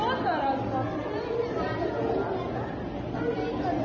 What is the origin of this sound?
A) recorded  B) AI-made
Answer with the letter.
A